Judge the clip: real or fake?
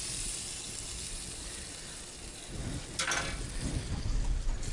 real